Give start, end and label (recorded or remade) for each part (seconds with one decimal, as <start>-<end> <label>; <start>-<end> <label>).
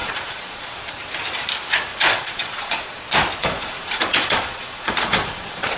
0.0-1.0 remade; 1.0-1.9 recorded; 1.9-3.0 remade; 3.0-3.4 recorded; 3.4-5.8 remade